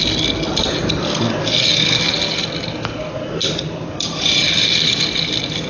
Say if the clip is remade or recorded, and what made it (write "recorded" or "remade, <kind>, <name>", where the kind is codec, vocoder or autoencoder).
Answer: recorded